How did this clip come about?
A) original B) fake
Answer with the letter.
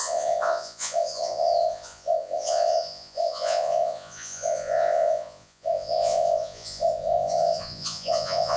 B